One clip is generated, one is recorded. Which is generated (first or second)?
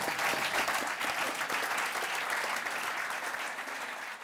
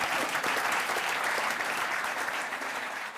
second